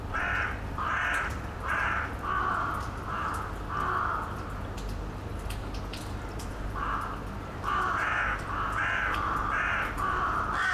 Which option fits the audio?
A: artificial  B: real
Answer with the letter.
B